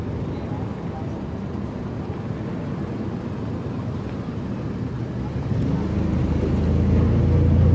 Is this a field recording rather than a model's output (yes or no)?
yes